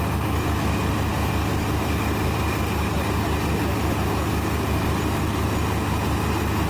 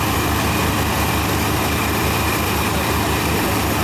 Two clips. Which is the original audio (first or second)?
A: first